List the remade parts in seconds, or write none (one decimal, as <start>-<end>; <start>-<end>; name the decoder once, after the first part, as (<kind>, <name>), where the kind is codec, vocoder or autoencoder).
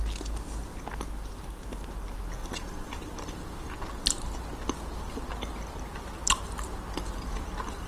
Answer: 2.4-3.8 (vocoder, BigVGAN v2)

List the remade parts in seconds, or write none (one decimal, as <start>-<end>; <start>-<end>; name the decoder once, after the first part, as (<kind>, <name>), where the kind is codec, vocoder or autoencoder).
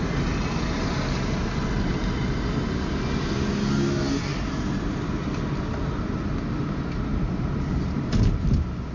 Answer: none